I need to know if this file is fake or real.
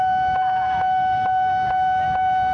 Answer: real